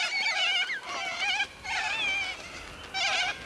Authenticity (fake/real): real